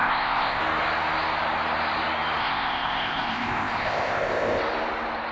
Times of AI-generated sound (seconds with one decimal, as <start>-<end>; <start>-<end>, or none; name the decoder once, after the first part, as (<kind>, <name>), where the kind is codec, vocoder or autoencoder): 0.0-0.6 (codec, ZipCodec); 2.4-4.6